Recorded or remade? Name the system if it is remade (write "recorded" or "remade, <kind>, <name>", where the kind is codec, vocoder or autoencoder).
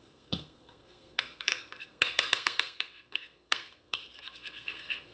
remade, codec, SNAC